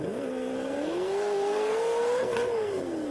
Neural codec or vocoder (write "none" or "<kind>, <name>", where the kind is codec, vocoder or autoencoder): codec, SNAC